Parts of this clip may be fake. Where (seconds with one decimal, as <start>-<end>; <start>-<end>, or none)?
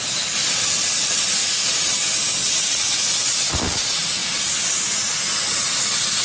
none